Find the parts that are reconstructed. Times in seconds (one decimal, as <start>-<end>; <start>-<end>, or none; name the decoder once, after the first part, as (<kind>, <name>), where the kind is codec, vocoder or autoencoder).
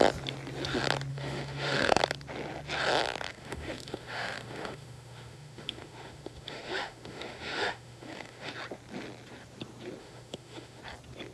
1.1-2.0 (autoencoder, DAC-VAE); 3.3-8.5; 10.0-10.8